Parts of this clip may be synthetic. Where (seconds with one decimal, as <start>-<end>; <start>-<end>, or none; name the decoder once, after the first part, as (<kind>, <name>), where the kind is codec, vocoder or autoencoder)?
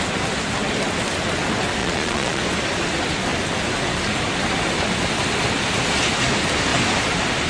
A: 1.8-2.4 (vocoder, Vocos)